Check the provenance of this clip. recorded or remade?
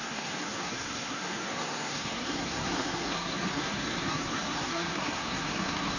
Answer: remade